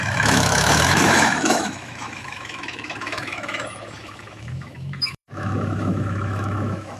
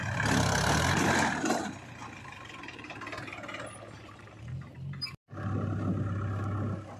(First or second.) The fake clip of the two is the first